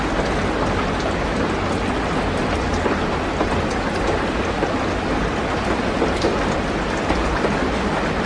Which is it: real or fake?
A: real